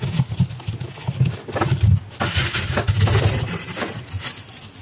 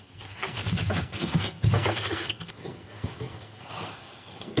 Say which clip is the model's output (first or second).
second